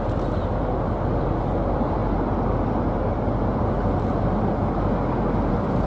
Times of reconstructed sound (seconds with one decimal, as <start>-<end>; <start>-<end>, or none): none